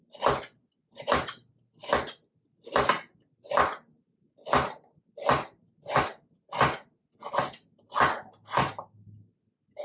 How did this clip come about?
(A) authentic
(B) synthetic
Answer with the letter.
A